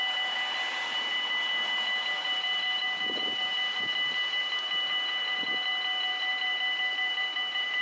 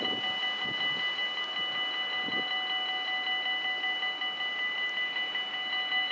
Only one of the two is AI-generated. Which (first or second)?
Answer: first